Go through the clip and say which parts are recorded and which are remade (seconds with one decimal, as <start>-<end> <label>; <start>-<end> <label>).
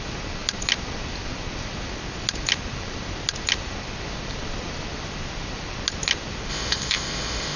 0.0-6.5 recorded; 6.5-7.6 remade